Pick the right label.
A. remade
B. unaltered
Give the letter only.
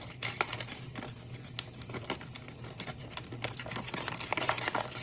A